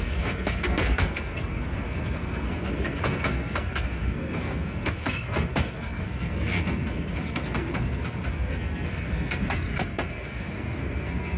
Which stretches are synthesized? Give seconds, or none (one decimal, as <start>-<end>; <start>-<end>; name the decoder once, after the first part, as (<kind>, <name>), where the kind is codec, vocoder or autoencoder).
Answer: 0.0-11.4 (codec, SNAC)